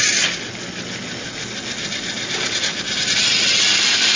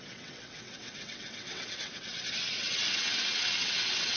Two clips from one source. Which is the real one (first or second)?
first